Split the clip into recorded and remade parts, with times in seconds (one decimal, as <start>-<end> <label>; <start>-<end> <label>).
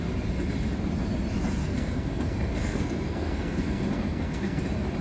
0.0-1.6 recorded; 1.6-4.6 remade; 4.6-5.0 recorded